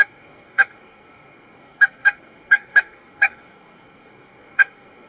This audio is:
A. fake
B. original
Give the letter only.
A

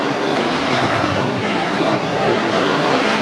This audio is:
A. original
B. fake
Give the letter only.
B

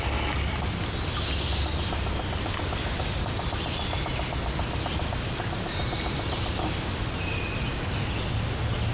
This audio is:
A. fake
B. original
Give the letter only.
B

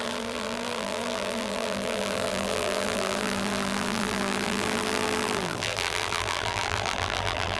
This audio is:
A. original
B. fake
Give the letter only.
B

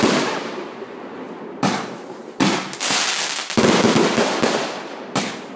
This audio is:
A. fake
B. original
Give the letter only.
B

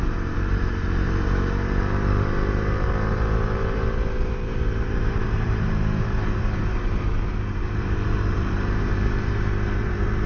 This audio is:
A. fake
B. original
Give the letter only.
A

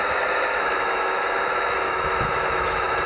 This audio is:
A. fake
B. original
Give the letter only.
A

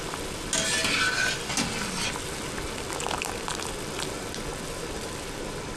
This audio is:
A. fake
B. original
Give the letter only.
B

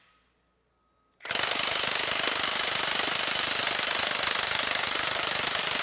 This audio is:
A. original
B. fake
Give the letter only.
A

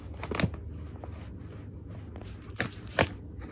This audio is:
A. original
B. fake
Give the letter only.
A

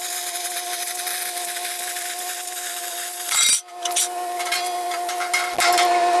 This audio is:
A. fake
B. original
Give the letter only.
B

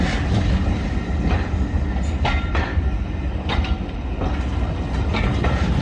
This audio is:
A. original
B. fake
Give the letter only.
A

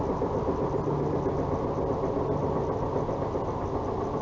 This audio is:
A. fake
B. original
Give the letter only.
B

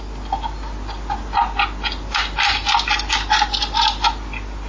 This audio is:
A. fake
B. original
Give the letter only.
B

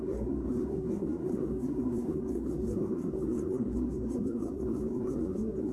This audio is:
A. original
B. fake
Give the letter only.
B